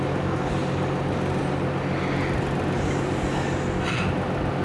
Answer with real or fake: real